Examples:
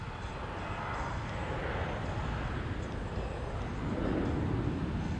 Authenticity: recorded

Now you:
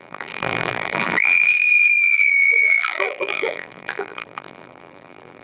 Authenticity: remade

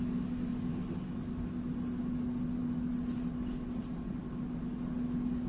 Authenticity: recorded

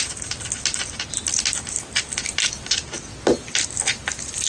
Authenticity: recorded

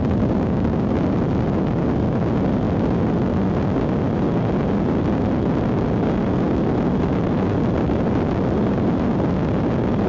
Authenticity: recorded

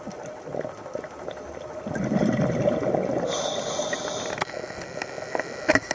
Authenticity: recorded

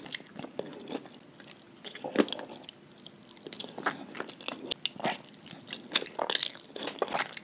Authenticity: recorded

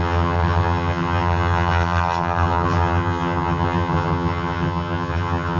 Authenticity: remade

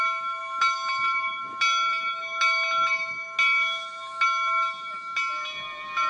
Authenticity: recorded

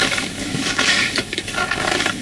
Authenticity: remade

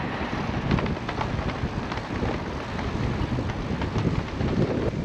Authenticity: recorded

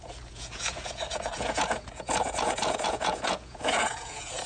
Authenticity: remade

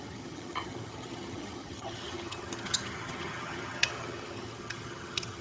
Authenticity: remade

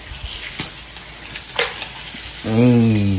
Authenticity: recorded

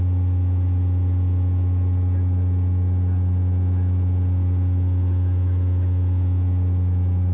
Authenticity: recorded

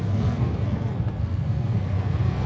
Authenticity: remade